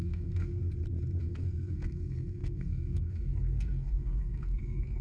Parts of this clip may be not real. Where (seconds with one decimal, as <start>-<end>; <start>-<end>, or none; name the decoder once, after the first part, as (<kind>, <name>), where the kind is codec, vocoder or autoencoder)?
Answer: 0.0-0.6 (codec, SNAC); 1.2-5.0